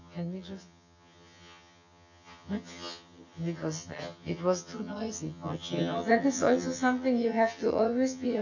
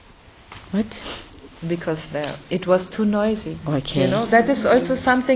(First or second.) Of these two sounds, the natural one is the second